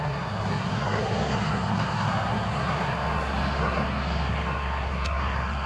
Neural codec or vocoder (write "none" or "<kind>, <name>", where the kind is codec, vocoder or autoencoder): codec, SNAC